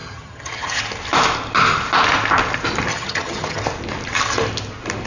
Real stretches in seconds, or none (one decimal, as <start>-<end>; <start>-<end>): 0.8-2.9; 3.6-5.1